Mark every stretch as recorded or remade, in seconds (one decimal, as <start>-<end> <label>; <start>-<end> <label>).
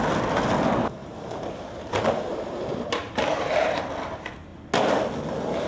0.0-1.0 recorded; 1.0-3.8 remade; 3.8-5.7 recorded